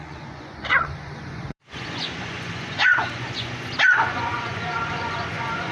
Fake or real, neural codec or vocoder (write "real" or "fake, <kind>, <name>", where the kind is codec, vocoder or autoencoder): fake, vocoder, Vocos